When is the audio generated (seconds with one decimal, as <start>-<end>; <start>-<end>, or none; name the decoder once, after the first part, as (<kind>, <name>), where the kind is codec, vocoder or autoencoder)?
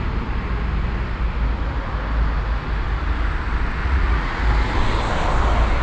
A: 3.8-4.4 (vocoder, Vocos)